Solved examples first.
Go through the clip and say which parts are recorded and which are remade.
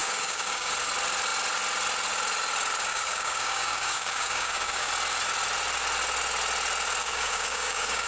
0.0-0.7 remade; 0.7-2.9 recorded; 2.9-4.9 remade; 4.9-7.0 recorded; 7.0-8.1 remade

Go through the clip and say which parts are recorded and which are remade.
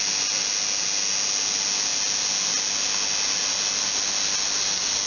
0.0-5.1 recorded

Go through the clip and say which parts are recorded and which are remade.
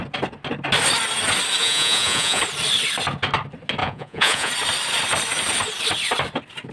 0.0-1.6 recorded; 1.6-2.4 remade; 2.4-3.8 recorded; 3.8-4.5 remade; 4.5-6.7 recorded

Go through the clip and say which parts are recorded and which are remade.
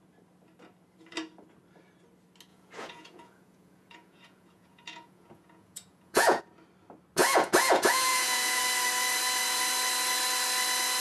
0.0-2.5 recorded; 2.5-6.4 remade; 6.4-7.2 recorded; 7.2-8.6 remade; 8.6-11.0 recorded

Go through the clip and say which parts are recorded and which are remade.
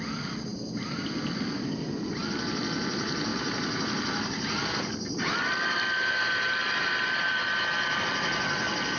0.0-0.5 recorded; 0.5-1.2 remade; 1.2-3.3 recorded; 3.3-8.0 remade; 8.0-9.0 recorded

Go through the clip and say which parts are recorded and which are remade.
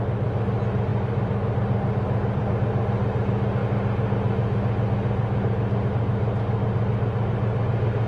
0.0-0.9 recorded; 0.9-2.5 remade; 2.5-8.1 recorded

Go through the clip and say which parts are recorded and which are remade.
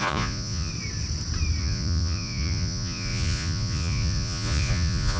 0.0-0.7 remade; 0.7-1.6 recorded; 1.6-5.2 remade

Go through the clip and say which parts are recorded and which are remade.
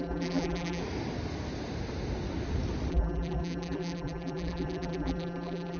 0.0-0.8 remade; 0.8-2.9 recorded; 2.9-5.8 remade